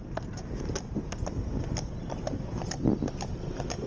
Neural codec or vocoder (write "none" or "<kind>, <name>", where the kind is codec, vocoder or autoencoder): none